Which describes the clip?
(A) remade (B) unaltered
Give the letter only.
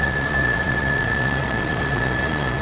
A